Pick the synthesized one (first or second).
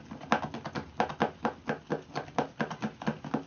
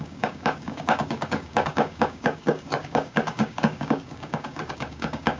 second